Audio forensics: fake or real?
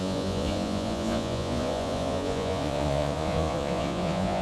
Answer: fake